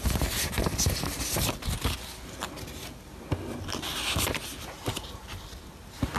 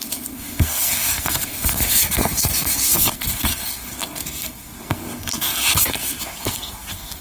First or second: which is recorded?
first